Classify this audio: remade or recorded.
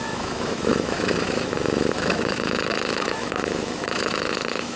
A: remade